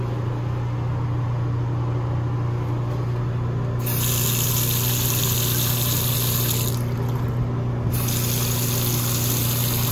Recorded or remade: recorded